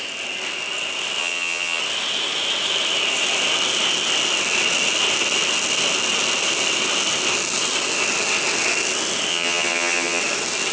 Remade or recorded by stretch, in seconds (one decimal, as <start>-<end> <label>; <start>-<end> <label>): 0.0-1.2 recorded; 1.2-1.8 remade; 1.8-9.3 recorded; 9.3-10.2 remade; 10.2-10.7 recorded